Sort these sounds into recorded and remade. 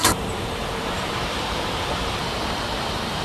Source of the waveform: remade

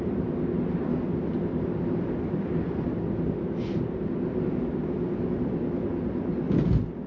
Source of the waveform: recorded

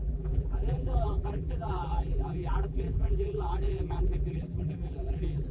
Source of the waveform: remade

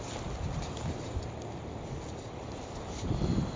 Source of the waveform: recorded